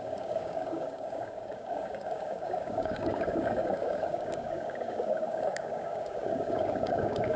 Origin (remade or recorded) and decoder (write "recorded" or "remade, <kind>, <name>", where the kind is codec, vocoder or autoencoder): remade, codec, DAC